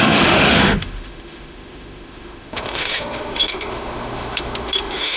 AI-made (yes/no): yes